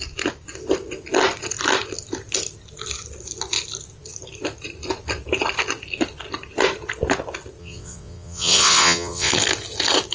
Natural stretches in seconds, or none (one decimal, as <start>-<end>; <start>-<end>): 0.0-7.6; 9.3-10.1